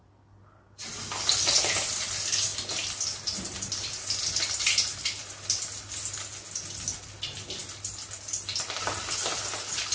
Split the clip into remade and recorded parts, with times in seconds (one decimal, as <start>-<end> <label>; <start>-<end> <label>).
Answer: 0.0-9.9 recorded